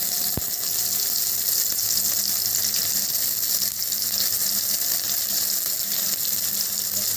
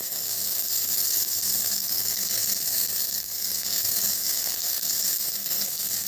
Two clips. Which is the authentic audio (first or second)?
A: first